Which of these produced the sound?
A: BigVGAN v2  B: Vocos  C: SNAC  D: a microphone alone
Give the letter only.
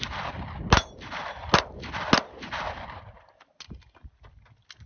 D